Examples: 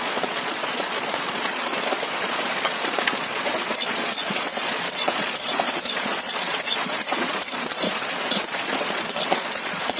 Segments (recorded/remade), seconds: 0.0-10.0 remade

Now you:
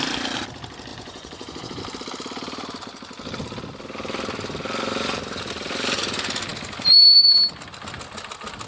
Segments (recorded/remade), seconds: 0.0-0.9 recorded; 0.9-1.8 remade; 1.8-8.7 recorded

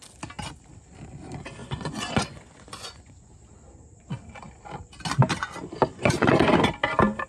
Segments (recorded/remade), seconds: 0.0-1.6 recorded; 1.6-3.3 remade; 3.3-5.9 recorded; 5.9-6.5 remade; 6.5-7.3 recorded